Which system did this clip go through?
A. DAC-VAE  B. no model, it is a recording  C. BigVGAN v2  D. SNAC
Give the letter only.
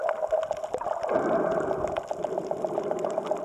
B